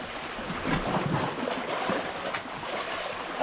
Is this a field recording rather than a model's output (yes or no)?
yes